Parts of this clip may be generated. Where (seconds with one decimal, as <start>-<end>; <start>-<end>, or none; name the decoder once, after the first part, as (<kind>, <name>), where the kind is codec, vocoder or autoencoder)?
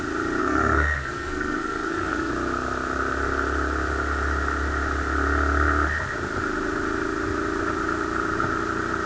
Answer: 0.4-2.3 (codec, SNAC)